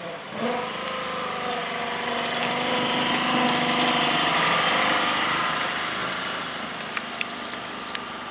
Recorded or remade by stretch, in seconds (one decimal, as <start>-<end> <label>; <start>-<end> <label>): 0.0-8.3 recorded